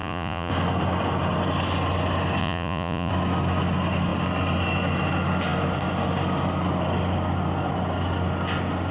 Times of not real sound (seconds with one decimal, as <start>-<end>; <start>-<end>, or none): 0.0-0.5; 2.4-3.1